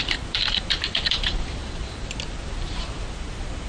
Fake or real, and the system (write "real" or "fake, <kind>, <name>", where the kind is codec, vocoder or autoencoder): fake, vocoder, BigVGAN v2